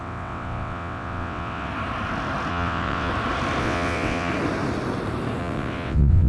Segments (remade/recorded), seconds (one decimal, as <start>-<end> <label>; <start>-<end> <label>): 0.0-1.7 remade; 1.7-2.5 recorded; 2.5-3.1 remade; 3.1-3.6 recorded; 3.6-4.3 remade; 4.3-5.4 recorded; 5.4-6.3 remade